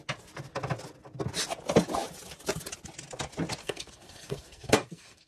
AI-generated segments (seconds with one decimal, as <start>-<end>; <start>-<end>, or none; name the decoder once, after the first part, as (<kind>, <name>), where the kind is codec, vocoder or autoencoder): 3.6-5.3 (codec, SNAC)